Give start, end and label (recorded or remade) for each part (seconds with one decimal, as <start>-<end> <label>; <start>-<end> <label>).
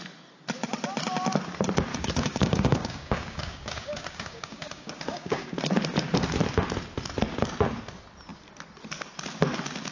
0.0-1.9 recorded; 1.9-5.6 remade; 5.6-9.9 recorded